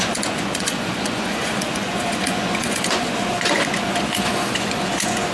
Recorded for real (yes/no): no